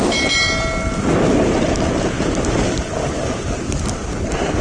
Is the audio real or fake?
real